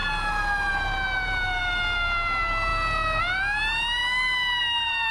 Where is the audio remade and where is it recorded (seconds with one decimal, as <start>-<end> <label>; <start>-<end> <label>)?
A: 0.0-0.7 recorded; 0.7-2.7 remade; 2.7-3.2 recorded; 3.2-4.0 remade; 4.0-4.6 recorded; 4.6-5.1 remade